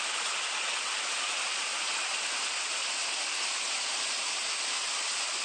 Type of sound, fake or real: real